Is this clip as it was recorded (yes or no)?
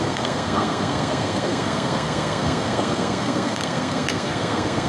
no